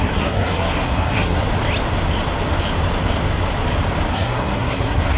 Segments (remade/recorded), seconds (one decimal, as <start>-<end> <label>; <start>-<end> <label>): 0.0-1.4 remade; 1.4-4.1 recorded; 4.1-5.2 remade